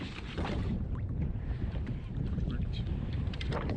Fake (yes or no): yes